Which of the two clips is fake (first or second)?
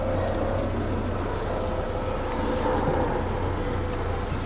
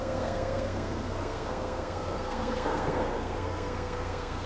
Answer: second